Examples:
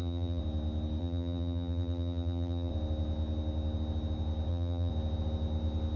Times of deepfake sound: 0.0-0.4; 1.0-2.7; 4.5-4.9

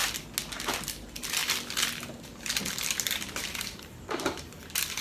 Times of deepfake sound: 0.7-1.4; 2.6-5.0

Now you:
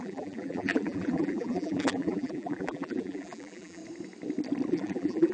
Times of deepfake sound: 0.0-3.8; 4.7-5.3